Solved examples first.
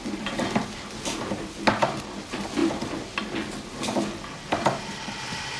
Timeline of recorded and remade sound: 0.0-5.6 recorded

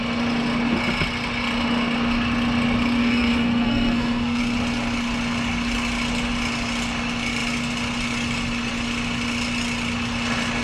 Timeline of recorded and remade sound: 0.0-3.0 recorded; 3.0-4.4 remade; 4.4-10.6 recorded

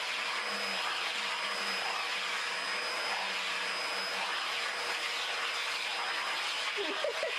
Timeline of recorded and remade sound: 0.0-7.4 recorded

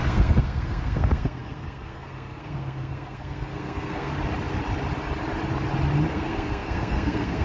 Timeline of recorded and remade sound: 0.0-4.1 remade; 4.1-6.1 recorded; 6.1-7.4 remade